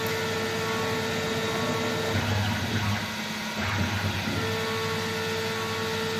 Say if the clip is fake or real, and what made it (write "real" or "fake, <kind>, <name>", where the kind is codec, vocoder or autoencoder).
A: real